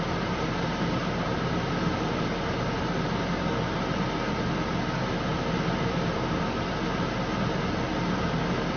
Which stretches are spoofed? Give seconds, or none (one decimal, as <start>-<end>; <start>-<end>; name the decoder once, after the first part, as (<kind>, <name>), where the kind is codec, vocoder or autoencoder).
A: none